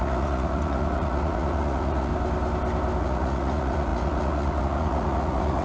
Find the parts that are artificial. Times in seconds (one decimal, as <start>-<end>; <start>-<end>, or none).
0.0-2.1; 3.0-5.6